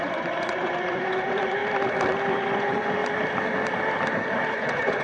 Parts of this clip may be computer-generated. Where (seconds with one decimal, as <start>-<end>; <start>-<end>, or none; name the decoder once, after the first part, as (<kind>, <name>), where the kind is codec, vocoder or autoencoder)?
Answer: 0.0-1.6 (vocoder, Vocos); 2.3-3.0; 4.5-5.0